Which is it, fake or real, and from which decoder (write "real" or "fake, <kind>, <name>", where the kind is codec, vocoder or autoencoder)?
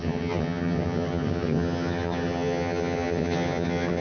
fake, vocoder, HiFi-GAN